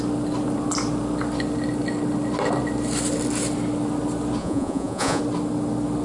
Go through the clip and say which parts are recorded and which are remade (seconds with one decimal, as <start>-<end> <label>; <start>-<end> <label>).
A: 0.0-4.4 recorded; 4.4-5.2 remade; 5.2-6.0 recorded